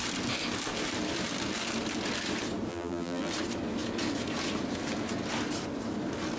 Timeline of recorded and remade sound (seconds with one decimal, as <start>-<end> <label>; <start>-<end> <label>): 0.0-2.7 recorded; 2.7-3.3 remade; 3.3-6.4 recorded

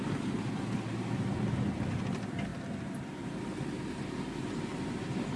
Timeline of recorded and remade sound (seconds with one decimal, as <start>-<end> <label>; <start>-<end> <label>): 0.0-5.4 recorded

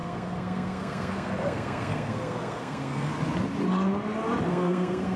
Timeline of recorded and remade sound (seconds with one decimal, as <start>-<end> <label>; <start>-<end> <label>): 0.0-3.1 remade; 3.1-4.5 recorded; 4.5-5.2 remade

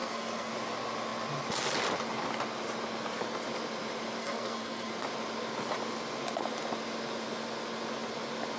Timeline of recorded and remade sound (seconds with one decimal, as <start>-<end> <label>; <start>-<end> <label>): 0.0-0.5 remade; 0.5-4.2 recorded; 4.2-4.9 remade; 4.9-8.6 recorded

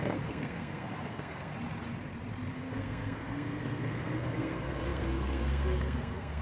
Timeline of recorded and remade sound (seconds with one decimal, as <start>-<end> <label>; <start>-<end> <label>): 0.0-1.5 remade; 1.5-2.5 recorded; 2.5-6.4 remade

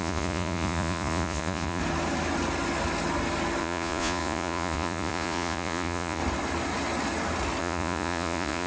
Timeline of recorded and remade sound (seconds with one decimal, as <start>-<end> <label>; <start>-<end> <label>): 0.0-1.8 remade; 1.8-3.6 recorded; 3.6-6.2 remade; 6.2-7.6 recorded; 7.6-8.7 remade